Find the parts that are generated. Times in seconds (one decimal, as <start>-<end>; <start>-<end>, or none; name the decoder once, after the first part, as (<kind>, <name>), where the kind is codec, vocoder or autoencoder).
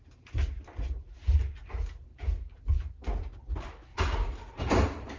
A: 2.1-2.9 (vocoder, BigVGAN v2); 3.9-4.6